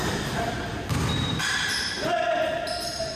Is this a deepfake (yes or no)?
no